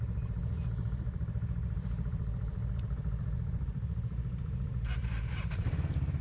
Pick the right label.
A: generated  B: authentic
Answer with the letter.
A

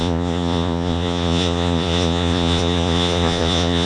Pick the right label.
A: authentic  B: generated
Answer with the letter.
B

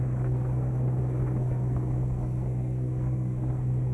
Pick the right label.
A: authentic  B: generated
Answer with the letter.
B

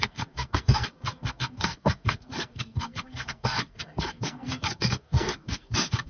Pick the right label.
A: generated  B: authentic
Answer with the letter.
A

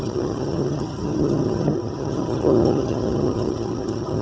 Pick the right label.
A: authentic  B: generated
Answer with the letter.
B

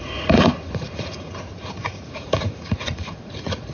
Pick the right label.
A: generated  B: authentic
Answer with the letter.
A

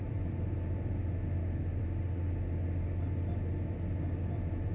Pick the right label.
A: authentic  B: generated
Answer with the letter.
A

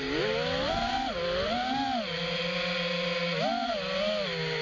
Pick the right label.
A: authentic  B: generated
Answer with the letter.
A